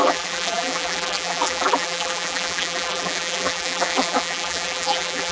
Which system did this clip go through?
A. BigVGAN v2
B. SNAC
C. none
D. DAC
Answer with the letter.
A